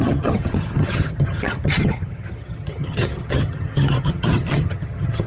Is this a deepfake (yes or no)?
yes